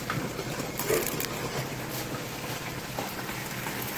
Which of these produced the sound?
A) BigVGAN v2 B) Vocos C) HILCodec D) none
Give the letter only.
D